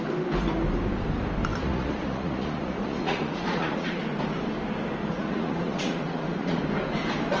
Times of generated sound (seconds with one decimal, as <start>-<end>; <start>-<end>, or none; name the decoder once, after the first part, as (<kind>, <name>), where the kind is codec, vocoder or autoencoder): 1.6-4.0 (vocoder, Vocos); 5.0-6.6